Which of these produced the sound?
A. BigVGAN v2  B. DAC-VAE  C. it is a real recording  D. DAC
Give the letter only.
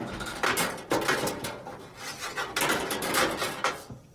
C